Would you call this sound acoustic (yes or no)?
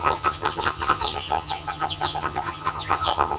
no